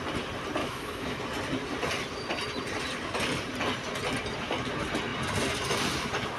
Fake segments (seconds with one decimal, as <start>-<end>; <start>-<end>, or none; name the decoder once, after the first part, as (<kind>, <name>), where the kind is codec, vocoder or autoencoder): 0.6-1.2 (autoencoder, DAC-VAE)